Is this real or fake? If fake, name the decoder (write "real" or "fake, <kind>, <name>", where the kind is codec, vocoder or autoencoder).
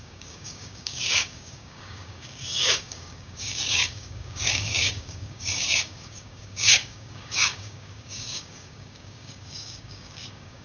fake, codec, DAC